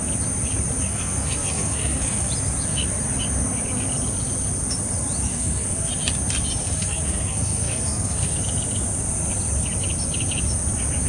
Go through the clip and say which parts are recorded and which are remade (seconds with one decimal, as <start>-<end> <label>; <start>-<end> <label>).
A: 0.0-0.8 recorded; 0.8-2.3 remade; 2.3-5.3 recorded; 5.3-5.9 remade; 5.9-6.6 recorded; 6.6-8.4 remade; 8.4-11.1 recorded